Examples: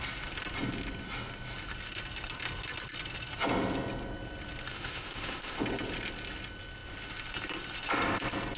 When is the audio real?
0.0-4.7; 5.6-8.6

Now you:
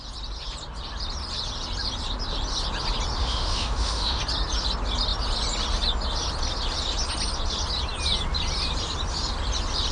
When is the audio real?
0.0-3.2; 4.2-9.9

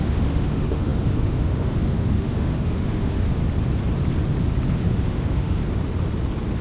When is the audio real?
3.4-4.7; 5.6-6.6